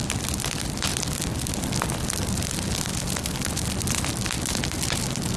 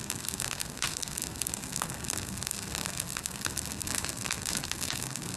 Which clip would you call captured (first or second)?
first